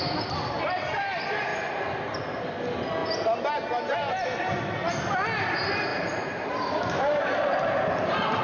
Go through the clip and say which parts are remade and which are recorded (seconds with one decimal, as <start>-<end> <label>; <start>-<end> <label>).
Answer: 0.0-1.5 recorded; 1.5-2.4 remade; 2.4-5.9 recorded; 5.9-8.4 remade